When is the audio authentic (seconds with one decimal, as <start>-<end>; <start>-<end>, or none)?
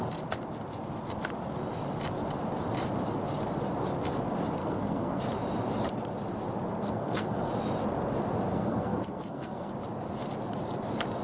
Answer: 0.0-4.6; 5.2-6.8; 7.5-8.5; 9.7-11.2